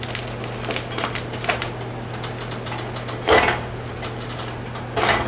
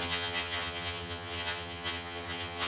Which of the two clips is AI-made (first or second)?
second